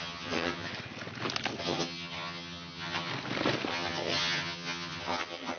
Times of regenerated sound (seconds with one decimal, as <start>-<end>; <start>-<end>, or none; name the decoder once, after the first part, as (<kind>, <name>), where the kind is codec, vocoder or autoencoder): 0.0-0.7 (vocoder, HiFi-GAN); 1.6-3.1; 3.7-5.6